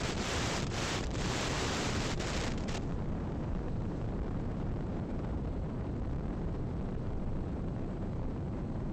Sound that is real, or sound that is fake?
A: fake